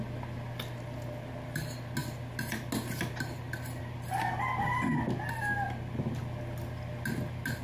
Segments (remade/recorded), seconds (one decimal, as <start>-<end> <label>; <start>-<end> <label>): 0.0-7.6 recorded